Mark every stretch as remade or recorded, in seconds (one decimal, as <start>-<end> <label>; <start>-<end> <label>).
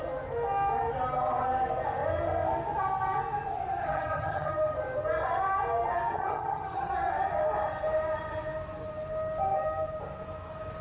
0.0-3.8 recorded; 3.8-4.5 remade; 4.5-6.1 recorded; 6.1-6.9 remade; 6.9-10.8 recorded